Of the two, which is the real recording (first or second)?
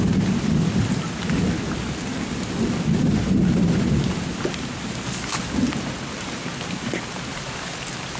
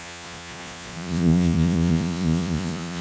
first